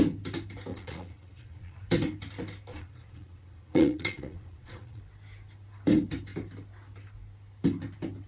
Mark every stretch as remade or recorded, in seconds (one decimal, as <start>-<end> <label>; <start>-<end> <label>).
0.0-0.7 recorded; 0.7-1.8 remade; 1.8-2.7 recorded; 2.7-5.0 remade; 5.0-8.3 recorded